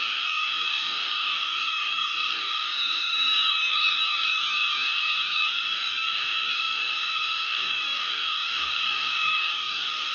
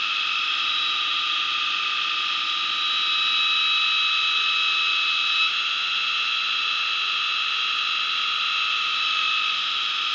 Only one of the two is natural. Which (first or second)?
second